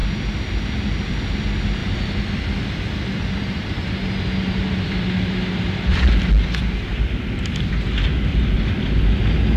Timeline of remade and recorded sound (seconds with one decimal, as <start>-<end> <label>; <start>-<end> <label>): 0.0-1.8 recorded; 1.8-6.1 remade; 6.1-8.3 recorded; 8.3-9.2 remade; 9.2-9.6 recorded